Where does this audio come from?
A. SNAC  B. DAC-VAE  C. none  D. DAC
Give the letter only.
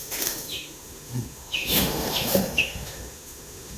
B